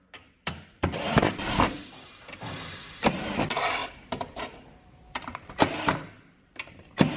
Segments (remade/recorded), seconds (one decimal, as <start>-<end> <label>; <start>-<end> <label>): 0.0-7.2 remade